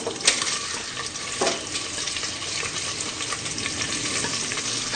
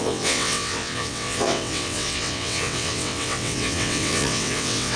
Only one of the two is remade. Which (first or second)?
second